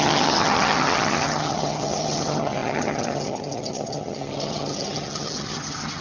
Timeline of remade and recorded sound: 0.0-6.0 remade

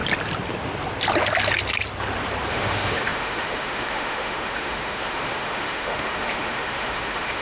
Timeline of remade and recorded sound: 0.0-2.5 recorded; 2.5-7.4 remade

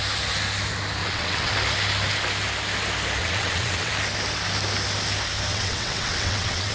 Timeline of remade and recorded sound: 0.0-1.0 recorded; 1.0-1.5 remade; 1.5-3.2 recorded; 3.2-3.9 remade; 3.9-5.5 recorded; 5.5-6.7 remade

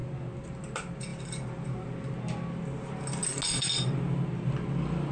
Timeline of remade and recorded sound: 0.0-5.1 recorded

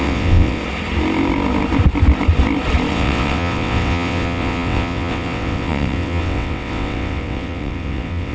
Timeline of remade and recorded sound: 0.0-0.6 remade; 0.6-2.9 recorded; 2.9-8.3 remade

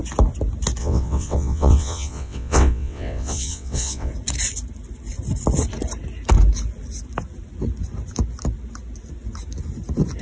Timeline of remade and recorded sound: 0.0-0.8 recorded; 0.8-4.1 remade; 4.1-10.2 recorded

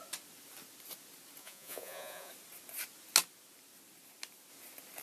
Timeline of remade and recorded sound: 0.0-1.4 recorded; 1.4-2.3 remade; 2.3-5.0 recorded

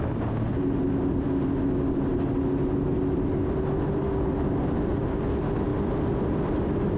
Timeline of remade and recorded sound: 0.0-7.0 recorded